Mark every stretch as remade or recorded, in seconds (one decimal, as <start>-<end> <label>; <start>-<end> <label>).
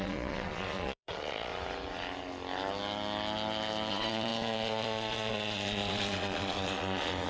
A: 0.0-1.5 remade; 1.5-3.9 recorded; 3.9-7.3 remade